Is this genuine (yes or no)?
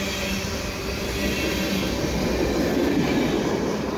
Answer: yes